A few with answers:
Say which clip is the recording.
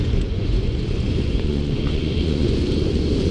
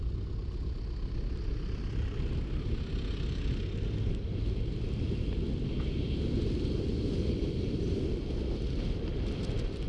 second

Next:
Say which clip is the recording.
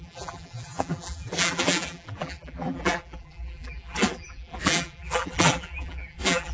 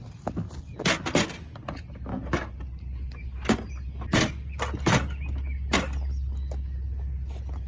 second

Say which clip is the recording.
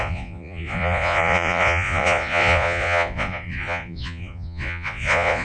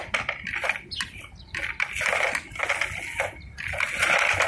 second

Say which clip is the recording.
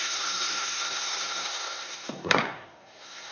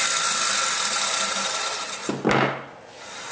second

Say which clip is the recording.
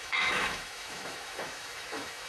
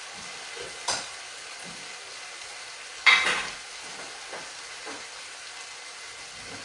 second